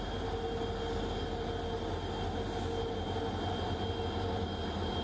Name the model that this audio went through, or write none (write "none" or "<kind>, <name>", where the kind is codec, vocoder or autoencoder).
none